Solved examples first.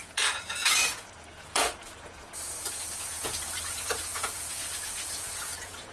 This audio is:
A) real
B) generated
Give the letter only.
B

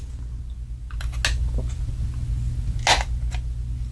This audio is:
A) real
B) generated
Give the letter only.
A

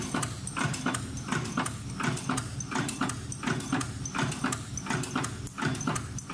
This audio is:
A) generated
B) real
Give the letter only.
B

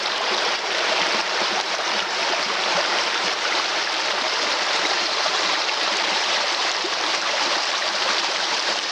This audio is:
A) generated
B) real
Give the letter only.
A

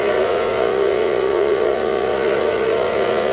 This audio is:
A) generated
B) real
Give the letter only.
A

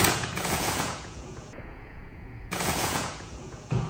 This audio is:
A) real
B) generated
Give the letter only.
B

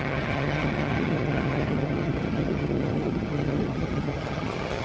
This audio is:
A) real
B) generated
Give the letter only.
B